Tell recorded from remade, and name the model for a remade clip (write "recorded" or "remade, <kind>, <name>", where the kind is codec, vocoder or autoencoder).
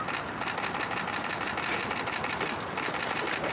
remade, vocoder, BigVGAN v2